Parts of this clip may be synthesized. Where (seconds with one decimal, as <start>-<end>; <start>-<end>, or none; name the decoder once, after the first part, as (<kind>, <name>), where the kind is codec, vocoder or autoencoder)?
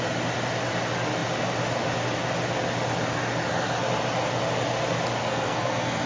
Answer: 5.2-6.1 (codec, SNAC)